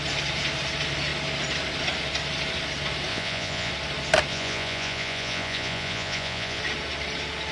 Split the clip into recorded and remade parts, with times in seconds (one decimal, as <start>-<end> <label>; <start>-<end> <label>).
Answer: 0.0-3.1 recorded; 3.1-3.7 remade; 3.7-4.3 recorded; 4.3-6.6 remade; 6.6-7.5 recorded

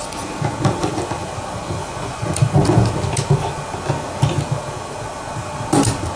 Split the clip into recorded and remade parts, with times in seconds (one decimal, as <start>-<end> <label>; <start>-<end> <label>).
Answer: 0.0-1.8 recorded; 1.8-2.3 remade; 2.3-6.2 recorded

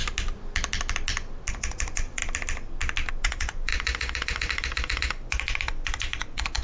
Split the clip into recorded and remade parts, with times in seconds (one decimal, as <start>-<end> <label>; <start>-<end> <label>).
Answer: 0.0-1.5 recorded; 1.5-2.2 remade; 2.2-3.1 recorded; 3.1-6.6 remade

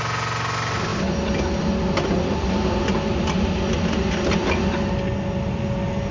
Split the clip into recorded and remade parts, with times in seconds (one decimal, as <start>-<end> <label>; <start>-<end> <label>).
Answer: 0.0-6.1 recorded